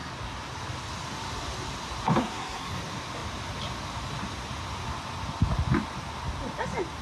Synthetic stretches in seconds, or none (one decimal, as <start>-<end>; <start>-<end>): 2.2-2.8

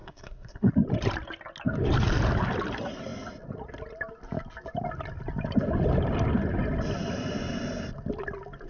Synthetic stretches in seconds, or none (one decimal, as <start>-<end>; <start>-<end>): 0.0-0.7

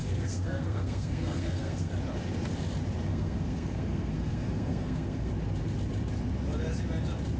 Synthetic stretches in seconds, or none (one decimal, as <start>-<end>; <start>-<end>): 0.0-1.9; 3.1-5.3

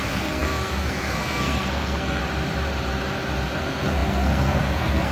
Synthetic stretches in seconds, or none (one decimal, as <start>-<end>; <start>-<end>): 0.0-2.2; 3.6-5.1

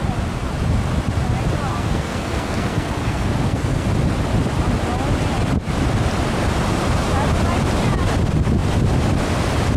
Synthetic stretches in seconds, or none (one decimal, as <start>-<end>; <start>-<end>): 1.7-3.9

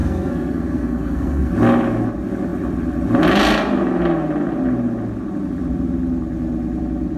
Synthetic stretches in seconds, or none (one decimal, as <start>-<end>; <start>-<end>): 0.0-1.5

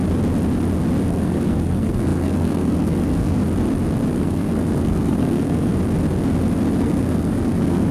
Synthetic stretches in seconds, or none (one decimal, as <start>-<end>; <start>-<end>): 1.1-3.4; 4.2-5.7; 6.8-7.9

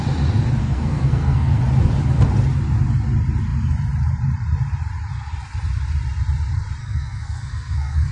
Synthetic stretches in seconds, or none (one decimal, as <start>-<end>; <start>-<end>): 0.6-1.6; 6.8-8.1